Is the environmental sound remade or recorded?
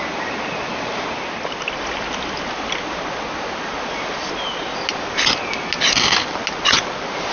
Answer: recorded